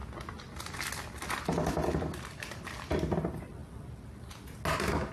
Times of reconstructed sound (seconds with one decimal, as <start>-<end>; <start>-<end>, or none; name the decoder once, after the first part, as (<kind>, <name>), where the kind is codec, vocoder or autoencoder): none